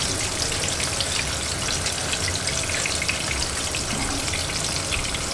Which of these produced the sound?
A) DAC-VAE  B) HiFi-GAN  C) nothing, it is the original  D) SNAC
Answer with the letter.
C